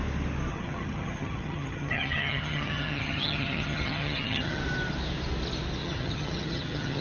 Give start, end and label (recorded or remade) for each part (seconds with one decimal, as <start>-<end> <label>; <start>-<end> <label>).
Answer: 0.0-0.5 recorded; 0.5-4.6 remade; 4.6-5.8 recorded; 5.8-7.0 remade

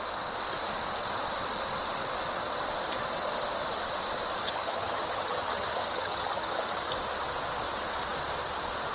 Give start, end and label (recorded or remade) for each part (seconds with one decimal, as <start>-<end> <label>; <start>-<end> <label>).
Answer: 0.0-4.4 recorded; 4.4-6.9 remade; 6.9-8.9 recorded

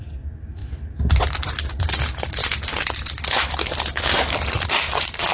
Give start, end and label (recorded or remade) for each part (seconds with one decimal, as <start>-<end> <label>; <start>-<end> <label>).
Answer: 0.0-5.3 recorded